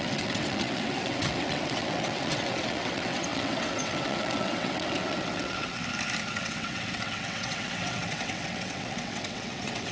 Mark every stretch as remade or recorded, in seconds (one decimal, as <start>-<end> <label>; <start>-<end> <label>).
0.0-5.8 remade; 5.8-6.3 recorded; 6.3-9.9 remade